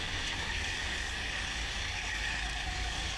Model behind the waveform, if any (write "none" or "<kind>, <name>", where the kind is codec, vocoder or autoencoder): codec, DAC